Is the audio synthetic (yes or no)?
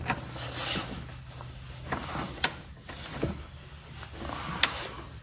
no